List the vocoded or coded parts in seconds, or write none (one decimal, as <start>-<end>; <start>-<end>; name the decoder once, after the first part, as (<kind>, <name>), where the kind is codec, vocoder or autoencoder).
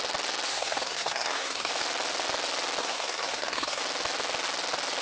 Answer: 0.5-1.7 (codec, SNAC); 2.8-3.8